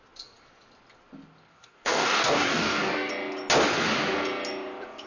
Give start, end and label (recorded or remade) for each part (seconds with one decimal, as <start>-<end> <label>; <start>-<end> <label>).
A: 0.0-1.5 recorded; 1.5-3.1 remade; 3.1-5.1 recorded